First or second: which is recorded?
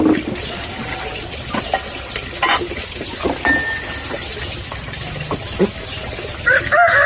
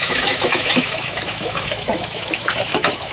first